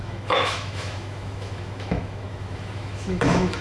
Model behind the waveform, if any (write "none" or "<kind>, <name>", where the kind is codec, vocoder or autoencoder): autoencoder, DAC-VAE